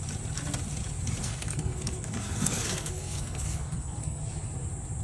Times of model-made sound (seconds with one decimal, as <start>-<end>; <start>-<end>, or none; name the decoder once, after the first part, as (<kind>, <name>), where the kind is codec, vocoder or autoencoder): 1.2-4.2 (codec, SNAC)